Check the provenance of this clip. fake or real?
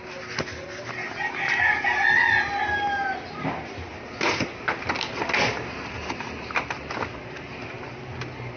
real